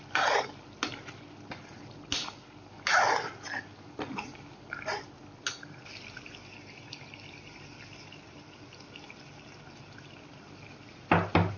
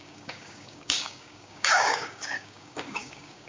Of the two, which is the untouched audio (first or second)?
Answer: first